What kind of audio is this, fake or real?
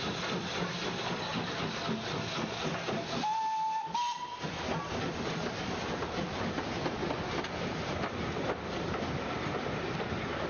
real